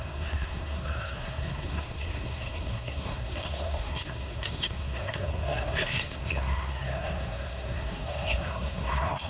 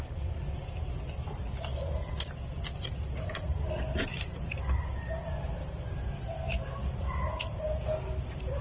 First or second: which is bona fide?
second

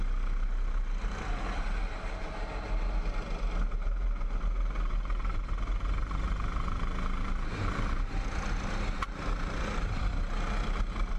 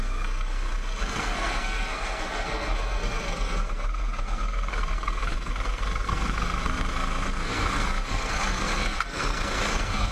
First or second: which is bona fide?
first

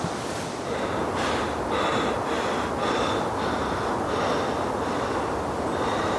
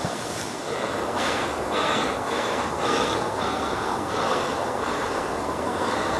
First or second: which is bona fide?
first